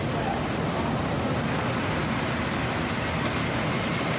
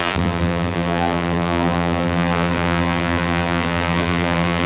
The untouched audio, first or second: first